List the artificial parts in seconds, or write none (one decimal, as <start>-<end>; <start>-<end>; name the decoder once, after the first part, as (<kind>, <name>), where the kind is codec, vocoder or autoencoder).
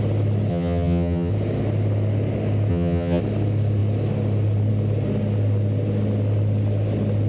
0.5-1.3 (vocoder, HiFi-GAN); 2.7-3.2